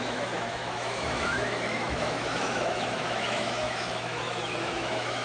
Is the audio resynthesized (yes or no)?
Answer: yes